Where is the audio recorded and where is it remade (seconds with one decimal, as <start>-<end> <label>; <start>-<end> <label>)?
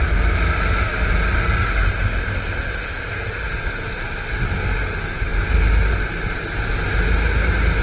0.0-7.8 recorded